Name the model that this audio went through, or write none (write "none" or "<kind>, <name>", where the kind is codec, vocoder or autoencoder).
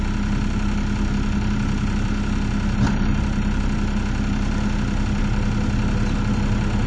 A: none